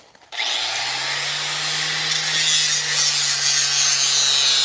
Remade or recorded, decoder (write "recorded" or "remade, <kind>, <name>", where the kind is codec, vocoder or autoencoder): recorded